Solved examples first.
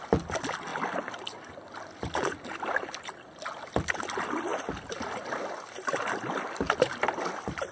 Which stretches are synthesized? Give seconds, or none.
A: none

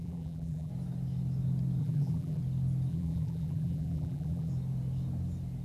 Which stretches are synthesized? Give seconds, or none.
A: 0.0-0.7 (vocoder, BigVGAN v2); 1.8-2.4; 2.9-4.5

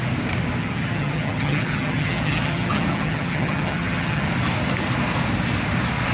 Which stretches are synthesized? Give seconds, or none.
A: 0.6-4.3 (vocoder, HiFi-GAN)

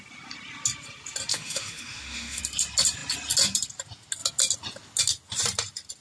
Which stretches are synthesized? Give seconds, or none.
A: 1.3-2.4 (autoencoder, DAC-VAE)

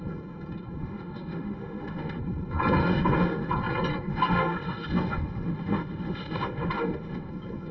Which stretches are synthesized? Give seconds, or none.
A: 0.8-2.2 (autoencoder, DAC-VAE); 2.8-3.5; 4.1-7.3